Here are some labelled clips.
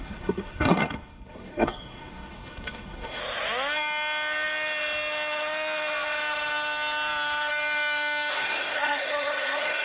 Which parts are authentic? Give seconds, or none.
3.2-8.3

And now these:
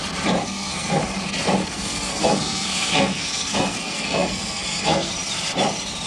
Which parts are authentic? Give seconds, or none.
0.0-0.4; 1.0-1.6; 5.1-6.1

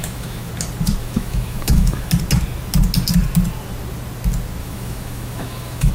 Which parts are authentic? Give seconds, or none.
0.5-1.0; 2.1-4.6

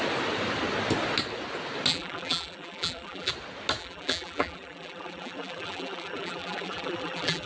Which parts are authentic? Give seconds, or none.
0.0-1.9; 3.3-3.8